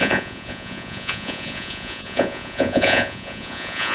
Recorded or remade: remade